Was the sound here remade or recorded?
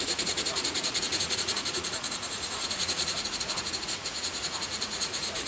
remade